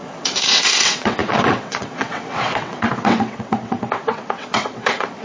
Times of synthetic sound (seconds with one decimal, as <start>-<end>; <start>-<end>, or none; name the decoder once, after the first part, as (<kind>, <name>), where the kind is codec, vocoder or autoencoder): 0.0-5.2 (vocoder, WaveNeXt)